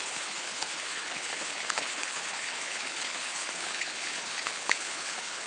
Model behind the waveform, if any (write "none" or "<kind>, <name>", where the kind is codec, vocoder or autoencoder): codec, HILCodec